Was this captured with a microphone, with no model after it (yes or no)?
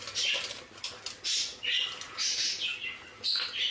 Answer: yes